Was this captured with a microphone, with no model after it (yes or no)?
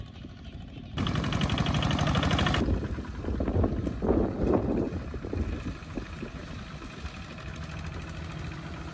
yes